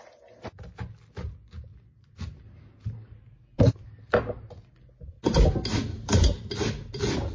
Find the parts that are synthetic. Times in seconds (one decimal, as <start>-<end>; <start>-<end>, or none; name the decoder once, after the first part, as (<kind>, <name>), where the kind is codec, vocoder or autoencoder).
none